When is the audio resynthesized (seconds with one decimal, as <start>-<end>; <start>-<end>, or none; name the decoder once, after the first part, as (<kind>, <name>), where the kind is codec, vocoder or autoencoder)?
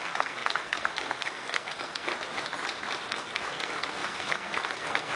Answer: 0.0-2.1 (codec, SNAC); 3.1-5.2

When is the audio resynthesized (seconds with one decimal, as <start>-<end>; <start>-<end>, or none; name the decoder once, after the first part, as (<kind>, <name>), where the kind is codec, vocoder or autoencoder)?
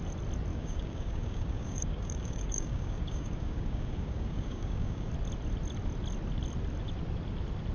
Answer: 0.5-5.1 (codec, DAC)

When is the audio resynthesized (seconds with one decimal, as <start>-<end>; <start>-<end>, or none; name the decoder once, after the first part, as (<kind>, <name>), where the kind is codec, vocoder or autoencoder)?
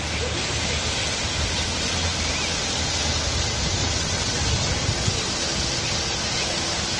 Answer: 3.8-4.4 (vocoder, WaveNeXt)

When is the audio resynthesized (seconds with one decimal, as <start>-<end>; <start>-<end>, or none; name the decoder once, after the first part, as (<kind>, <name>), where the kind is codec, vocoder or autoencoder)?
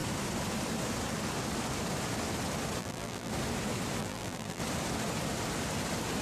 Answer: 2.8-3.3 (vocoder, BigVGAN v2); 4.0-4.6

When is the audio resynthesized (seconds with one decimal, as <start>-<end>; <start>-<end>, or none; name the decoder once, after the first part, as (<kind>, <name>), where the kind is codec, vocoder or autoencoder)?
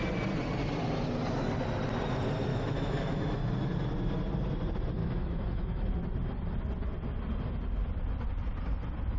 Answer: 2.5-3.5 (autoencoder, DAC-VAE); 5.0-5.9